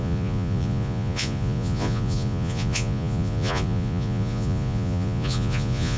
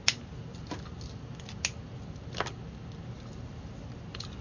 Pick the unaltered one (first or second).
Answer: second